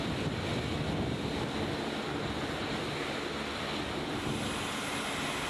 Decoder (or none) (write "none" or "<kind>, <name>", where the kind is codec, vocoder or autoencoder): none